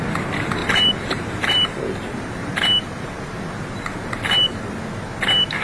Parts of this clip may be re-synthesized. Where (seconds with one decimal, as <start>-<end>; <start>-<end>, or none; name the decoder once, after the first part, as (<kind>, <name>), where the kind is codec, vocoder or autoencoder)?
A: 0.6-3.1 (vocoder, BigVGAN v2)